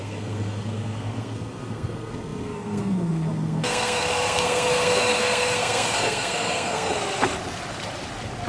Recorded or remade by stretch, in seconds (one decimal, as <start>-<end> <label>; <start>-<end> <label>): 0.0-7.0 remade; 7.0-8.5 recorded